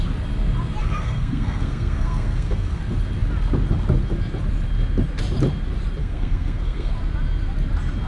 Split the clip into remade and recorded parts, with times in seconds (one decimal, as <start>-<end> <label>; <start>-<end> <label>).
0.0-0.8 recorded; 0.8-2.8 remade; 2.8-6.0 recorded; 6.0-6.9 remade; 6.9-8.1 recorded

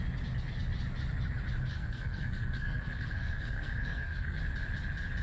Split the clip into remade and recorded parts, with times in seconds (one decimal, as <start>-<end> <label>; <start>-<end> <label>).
0.0-1.7 recorded; 1.7-4.4 remade; 4.4-5.2 recorded

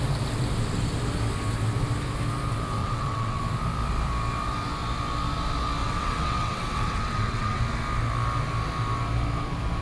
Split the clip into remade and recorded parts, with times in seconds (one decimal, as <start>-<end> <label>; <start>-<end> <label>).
0.0-2.8 recorded; 2.8-3.4 remade; 3.4-5.8 recorded; 5.8-7.6 remade; 7.6-9.8 recorded